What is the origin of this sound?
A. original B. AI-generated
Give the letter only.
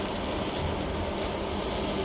A